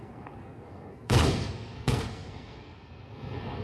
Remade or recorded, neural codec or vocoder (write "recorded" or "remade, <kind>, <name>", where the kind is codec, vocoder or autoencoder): remade, codec, SNAC